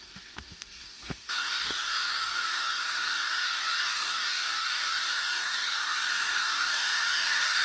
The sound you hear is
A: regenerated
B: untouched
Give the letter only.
A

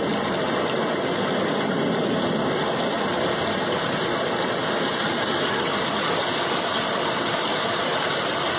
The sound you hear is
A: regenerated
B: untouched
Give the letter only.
B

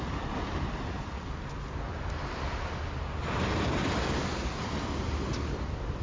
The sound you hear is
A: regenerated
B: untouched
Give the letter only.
B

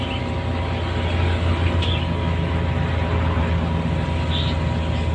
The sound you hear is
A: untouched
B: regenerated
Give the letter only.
A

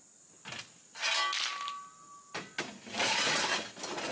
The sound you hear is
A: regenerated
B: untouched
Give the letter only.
B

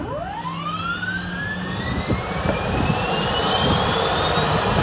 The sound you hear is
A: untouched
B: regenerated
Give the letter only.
A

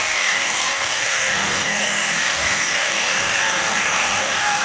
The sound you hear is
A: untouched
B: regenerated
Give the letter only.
B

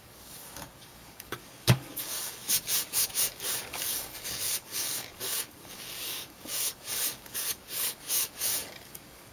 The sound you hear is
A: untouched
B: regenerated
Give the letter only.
B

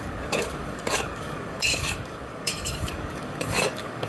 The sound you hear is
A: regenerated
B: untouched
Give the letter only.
A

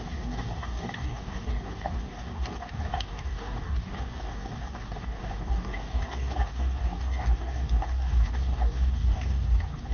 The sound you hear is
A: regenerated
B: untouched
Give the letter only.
A